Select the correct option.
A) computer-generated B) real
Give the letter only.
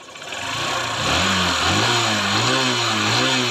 B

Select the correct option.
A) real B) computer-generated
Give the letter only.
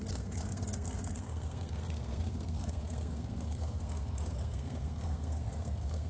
B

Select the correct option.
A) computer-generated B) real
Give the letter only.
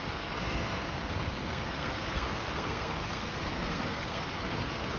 A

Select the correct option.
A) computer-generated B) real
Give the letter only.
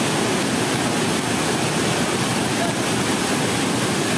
B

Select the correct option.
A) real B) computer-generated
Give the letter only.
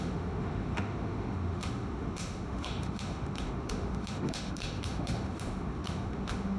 B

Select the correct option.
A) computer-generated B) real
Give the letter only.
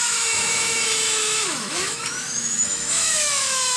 A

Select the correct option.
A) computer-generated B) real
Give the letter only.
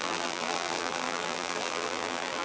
A